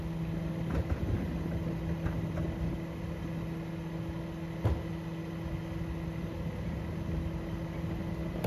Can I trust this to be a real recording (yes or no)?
yes